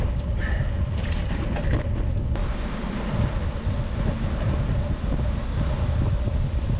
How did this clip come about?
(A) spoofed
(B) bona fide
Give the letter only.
B